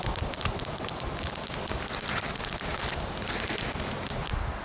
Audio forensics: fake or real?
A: real